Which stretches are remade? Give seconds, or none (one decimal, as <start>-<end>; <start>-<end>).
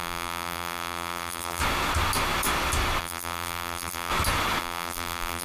0.0-1.6; 3.0-4.1; 4.6-5.4